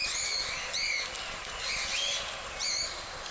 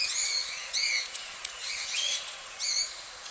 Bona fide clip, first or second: first